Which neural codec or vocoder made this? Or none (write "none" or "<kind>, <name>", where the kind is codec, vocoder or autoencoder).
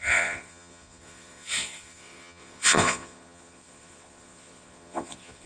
vocoder, Vocos